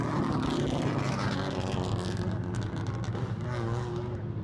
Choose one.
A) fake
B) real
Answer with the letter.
B